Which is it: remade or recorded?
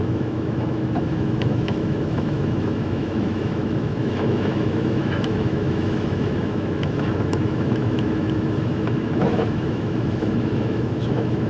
remade